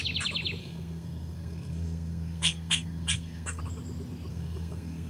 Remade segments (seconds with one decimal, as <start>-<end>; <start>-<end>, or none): 0.6-3.6; 4.3-5.1